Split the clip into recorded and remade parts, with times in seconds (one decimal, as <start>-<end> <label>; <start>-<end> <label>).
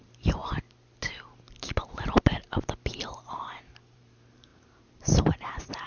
0.0-0.4 remade; 0.4-3.9 recorded; 3.9-5.9 remade